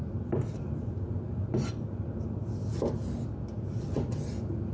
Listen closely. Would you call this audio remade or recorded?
recorded